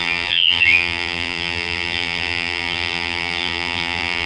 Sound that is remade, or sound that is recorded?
remade